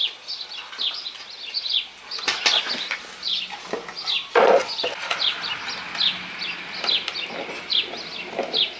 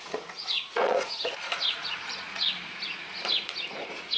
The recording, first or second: first